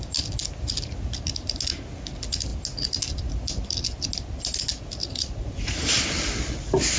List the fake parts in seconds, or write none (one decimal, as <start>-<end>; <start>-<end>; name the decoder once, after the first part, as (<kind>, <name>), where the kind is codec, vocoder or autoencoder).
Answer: 5.0-5.8 (vocoder, Vocos)